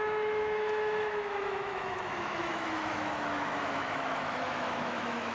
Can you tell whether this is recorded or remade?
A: remade